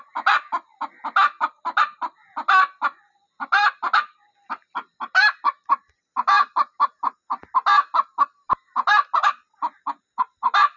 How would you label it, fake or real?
real